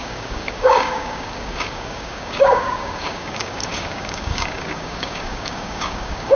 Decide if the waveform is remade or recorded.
remade